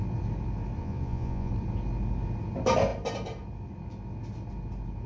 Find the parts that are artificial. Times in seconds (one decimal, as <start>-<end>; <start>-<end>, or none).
0.8-1.5